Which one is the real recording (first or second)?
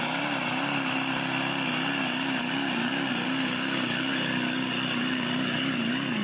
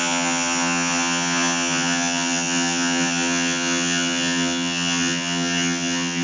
first